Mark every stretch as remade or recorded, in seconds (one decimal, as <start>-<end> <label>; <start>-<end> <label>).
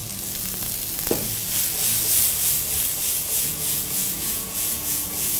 0.0-3.2 recorded; 3.2-5.4 remade